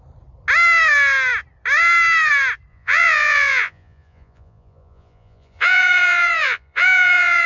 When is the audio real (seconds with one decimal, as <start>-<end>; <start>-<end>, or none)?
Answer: 0.0-2.7

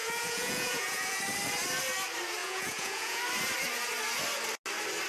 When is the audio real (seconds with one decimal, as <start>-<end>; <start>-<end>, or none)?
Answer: 1.2-2.4; 3.2-5.1

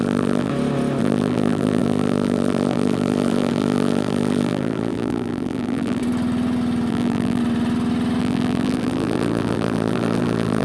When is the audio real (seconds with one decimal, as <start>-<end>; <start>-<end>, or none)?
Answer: 0.5-1.0; 6.0-6.9; 7.4-8.2

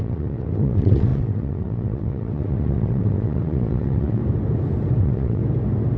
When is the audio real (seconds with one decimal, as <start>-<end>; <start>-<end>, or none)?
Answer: 4.2-5.0; 5.4-6.0

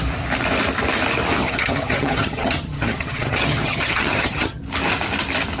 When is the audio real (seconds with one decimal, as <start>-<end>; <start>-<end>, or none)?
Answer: 0.0-1.4; 4.6-5.6